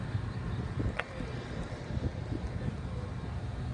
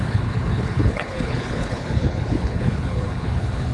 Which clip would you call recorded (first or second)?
first